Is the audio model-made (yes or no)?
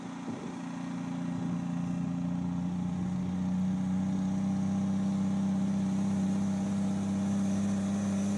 no